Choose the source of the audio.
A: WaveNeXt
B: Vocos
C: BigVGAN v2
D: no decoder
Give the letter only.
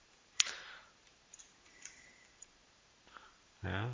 C